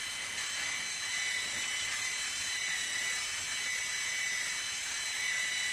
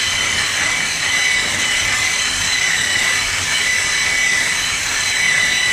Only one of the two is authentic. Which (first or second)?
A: first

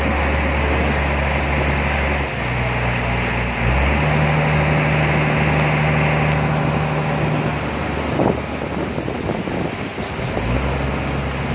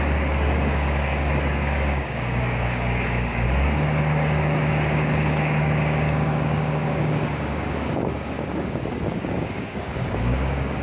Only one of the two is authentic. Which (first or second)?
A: first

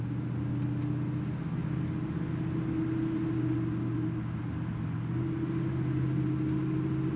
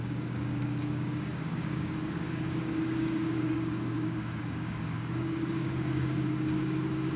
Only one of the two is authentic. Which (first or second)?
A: first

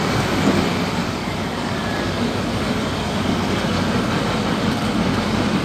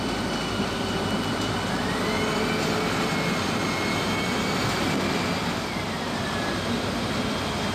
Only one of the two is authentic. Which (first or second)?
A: second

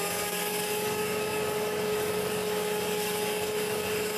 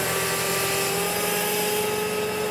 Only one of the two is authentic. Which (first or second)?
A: second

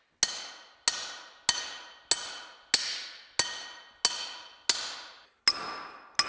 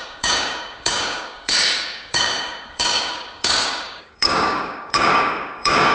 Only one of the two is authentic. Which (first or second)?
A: first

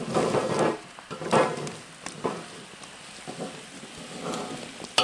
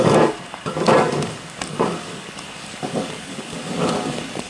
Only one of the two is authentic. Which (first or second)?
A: first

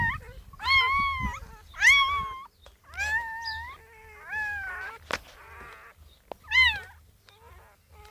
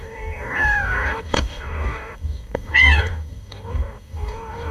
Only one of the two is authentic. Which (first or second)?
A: first